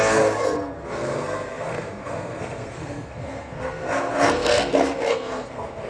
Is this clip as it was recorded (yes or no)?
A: no